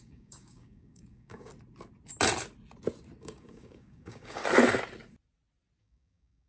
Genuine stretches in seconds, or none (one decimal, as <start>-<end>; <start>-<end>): 1.5-3.2; 4.4-5.8